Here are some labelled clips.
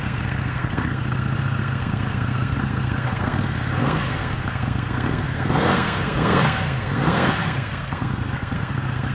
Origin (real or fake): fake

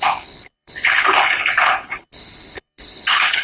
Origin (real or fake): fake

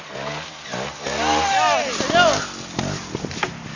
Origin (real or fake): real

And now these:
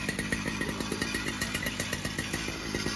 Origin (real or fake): real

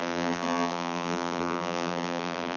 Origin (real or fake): fake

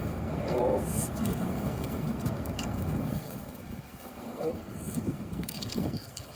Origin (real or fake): fake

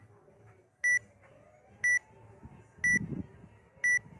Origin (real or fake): real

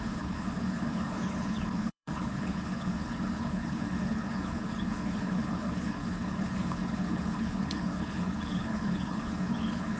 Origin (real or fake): fake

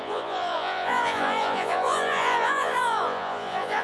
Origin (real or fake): fake